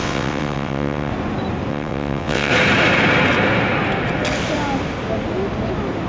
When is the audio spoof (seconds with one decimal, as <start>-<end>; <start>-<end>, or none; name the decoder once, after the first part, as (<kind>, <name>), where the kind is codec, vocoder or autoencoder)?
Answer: 0.0-1.1 (vocoder, WaveNeXt); 1.7-2.5